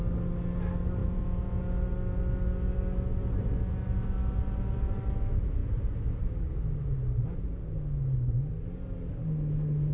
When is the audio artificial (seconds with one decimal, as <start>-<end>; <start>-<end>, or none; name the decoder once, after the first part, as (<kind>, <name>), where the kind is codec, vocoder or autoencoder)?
1.0-1.6 (vocoder, Vocos)